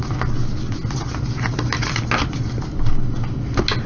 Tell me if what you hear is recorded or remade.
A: recorded